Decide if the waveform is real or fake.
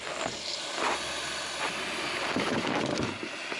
real